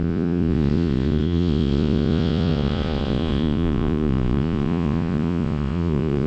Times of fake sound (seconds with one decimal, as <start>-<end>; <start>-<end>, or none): 0.0-6.3